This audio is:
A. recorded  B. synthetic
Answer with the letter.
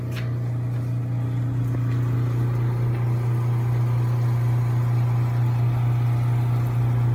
A